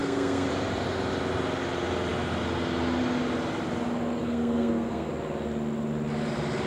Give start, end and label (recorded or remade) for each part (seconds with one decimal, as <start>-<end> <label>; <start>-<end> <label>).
0.0-0.5 remade; 0.5-4.2 recorded; 4.2-5.1 remade; 5.1-6.7 recorded